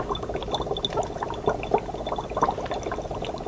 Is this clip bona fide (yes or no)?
yes